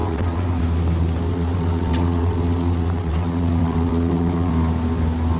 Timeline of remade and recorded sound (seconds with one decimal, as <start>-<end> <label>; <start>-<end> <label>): 0.0-0.6 remade; 0.6-1.3 recorded; 1.3-4.5 remade; 4.5-5.4 recorded